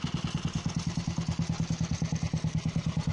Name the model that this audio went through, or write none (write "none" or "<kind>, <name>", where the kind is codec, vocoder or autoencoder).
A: none